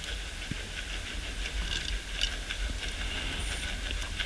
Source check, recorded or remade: recorded